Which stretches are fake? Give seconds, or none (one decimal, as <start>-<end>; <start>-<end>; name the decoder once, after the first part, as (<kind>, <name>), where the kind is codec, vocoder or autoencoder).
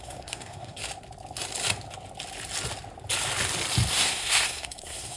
0.0-0.8 (codec, SNAC); 3.9-5.2